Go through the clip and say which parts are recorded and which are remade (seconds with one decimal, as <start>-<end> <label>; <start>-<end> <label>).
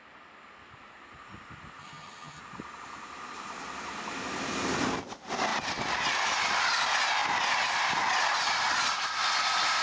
0.0-1.8 recorded; 1.8-2.4 remade; 2.4-9.8 recorded